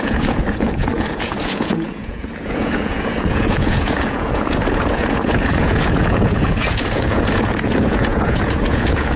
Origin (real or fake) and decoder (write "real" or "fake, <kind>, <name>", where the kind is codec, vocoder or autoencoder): fake, vocoder, Vocos